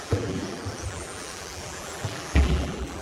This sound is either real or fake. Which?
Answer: fake